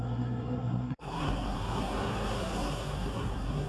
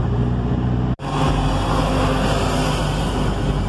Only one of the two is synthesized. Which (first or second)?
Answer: first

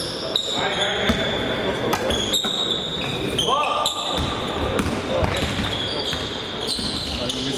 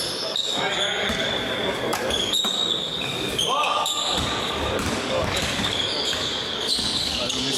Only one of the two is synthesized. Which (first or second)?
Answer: second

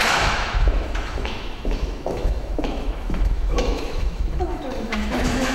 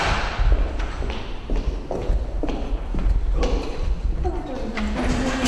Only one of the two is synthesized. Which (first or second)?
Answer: first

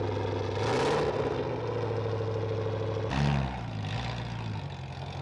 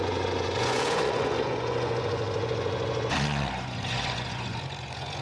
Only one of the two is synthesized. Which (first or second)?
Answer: second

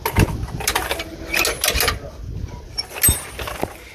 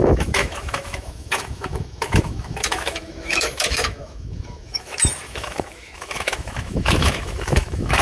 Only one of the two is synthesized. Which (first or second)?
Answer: second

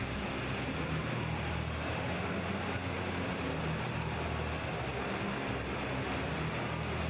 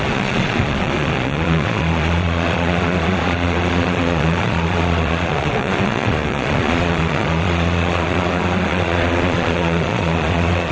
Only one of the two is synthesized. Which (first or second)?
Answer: second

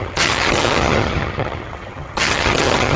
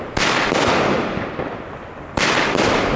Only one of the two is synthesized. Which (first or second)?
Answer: first